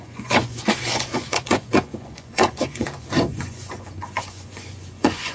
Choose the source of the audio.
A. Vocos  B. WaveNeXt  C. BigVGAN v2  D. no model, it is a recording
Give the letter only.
A